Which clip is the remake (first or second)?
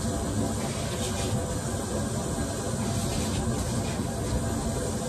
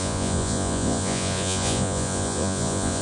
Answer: second